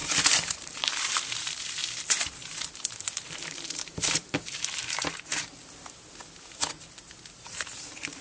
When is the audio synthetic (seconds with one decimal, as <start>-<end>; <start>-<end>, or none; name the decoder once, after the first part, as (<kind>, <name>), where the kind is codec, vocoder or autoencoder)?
0.0-1.8 (vocoder, BigVGAN v2); 3.0-5.3; 7.3-8.2